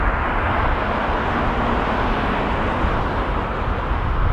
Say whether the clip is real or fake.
real